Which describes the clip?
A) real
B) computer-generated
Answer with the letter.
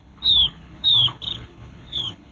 B